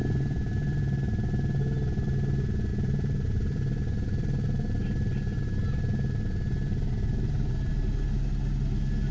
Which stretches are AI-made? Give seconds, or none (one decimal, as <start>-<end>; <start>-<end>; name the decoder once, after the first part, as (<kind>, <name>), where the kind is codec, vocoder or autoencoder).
0.0-1.6 (vocoder, BigVGAN v2); 2.7-7.8